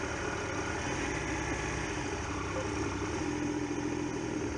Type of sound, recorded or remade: recorded